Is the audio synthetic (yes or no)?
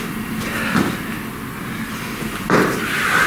no